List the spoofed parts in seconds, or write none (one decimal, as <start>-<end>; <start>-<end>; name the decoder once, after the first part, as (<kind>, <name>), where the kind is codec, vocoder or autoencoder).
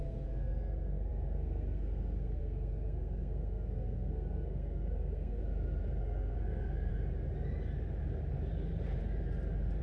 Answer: 0.0-5.4 (codec, SNAC); 6.0-6.9